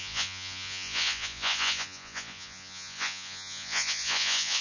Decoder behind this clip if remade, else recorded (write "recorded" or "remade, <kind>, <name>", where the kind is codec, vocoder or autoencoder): remade, vocoder, Vocos